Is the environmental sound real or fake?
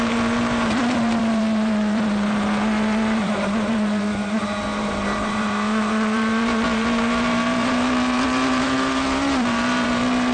fake